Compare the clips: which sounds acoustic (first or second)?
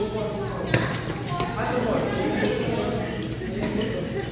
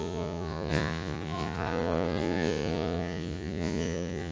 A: first